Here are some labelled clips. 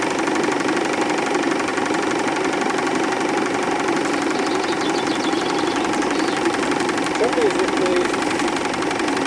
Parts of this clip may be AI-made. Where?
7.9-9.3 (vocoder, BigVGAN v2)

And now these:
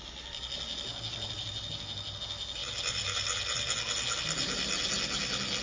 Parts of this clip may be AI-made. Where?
none

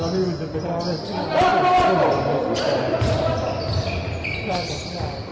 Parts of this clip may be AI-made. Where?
1.5-4.7 (vocoder, BigVGAN v2)